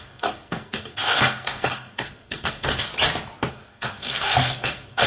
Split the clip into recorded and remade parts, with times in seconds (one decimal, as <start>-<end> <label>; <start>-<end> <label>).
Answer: 0.0-2.9 remade; 2.9-3.5 recorded; 3.5-5.1 remade